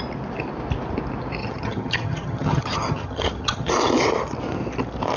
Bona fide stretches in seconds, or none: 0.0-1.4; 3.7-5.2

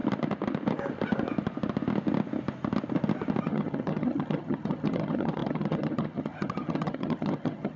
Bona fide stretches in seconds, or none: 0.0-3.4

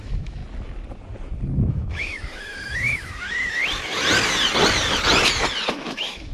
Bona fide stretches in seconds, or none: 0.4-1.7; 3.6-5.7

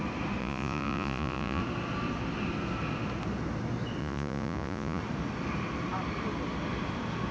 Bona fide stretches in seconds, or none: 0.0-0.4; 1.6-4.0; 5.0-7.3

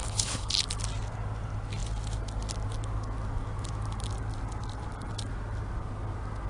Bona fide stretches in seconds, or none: 0.5-6.5